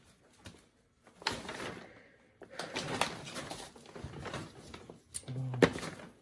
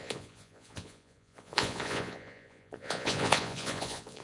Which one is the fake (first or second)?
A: second